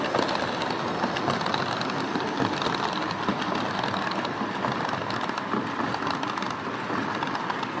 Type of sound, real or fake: real